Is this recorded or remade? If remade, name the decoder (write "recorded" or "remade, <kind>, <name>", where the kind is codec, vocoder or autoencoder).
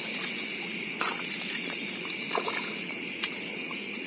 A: remade, vocoder, Vocos